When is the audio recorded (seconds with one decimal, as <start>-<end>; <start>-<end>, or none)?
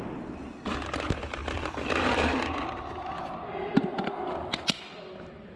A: 0.0-5.6